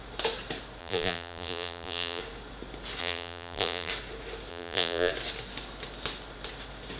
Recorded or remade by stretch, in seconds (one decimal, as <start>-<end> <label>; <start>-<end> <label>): 0.0-0.8 recorded; 0.8-2.2 remade; 2.2-3.0 recorded; 3.0-3.9 remade; 3.9-4.5 recorded; 4.5-5.1 remade; 5.1-7.0 recorded